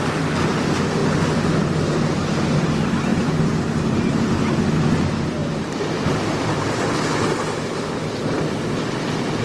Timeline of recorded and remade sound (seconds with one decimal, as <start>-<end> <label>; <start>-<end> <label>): 0.0-3.1 recorded; 3.1-4.3 remade; 4.3-5.4 recorded; 5.4-6.8 remade; 6.8-9.4 recorded